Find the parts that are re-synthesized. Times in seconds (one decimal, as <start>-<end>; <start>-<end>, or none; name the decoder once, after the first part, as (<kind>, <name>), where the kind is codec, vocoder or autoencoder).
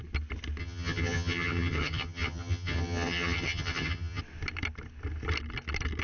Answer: 0.6-4.2 (vocoder, HiFi-GAN)